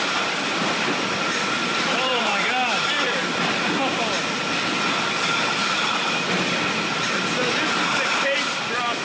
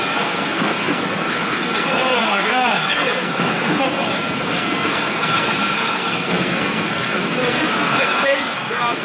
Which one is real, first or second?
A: first